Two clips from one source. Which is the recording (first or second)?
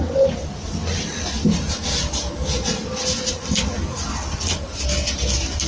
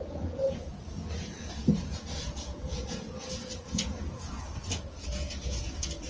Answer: first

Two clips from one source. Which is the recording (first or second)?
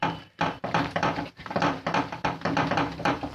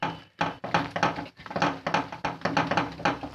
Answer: second